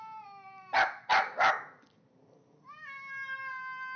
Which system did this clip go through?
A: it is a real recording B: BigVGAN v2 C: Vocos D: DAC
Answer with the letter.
A